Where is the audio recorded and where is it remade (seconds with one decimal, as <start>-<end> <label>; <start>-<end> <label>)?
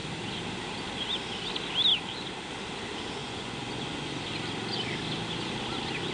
0.0-3.2 recorded; 3.2-4.1 remade; 4.1-6.1 recorded